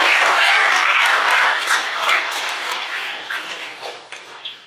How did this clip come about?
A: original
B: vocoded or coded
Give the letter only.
B